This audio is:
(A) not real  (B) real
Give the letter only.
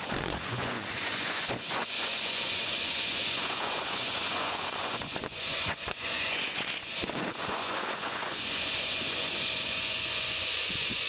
A